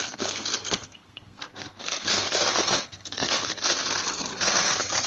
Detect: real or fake fake